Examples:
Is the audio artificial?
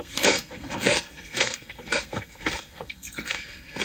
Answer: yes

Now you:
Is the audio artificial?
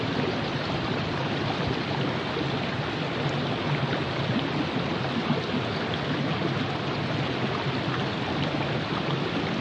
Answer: no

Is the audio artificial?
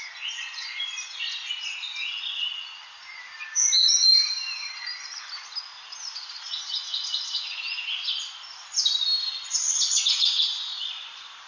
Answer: no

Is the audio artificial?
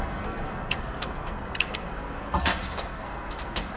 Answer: yes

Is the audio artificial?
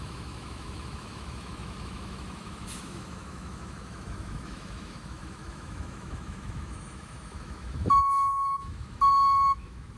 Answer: yes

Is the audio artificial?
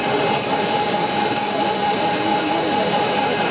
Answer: no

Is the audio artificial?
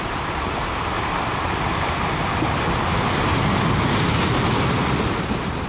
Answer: no